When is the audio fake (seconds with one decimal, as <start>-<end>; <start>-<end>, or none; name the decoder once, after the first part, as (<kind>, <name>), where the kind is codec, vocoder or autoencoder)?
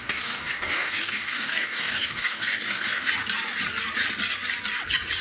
0.0-3.1 (codec, DAC)